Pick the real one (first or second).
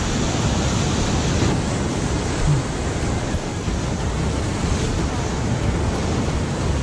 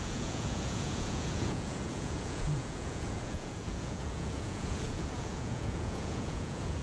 first